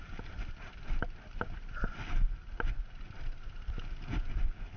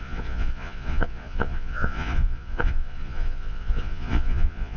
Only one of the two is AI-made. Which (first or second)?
second